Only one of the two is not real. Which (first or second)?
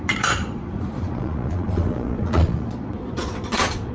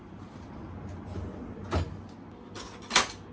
first